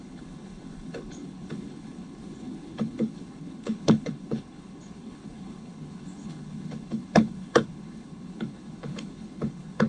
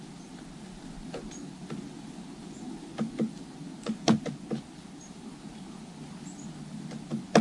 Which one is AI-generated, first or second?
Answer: first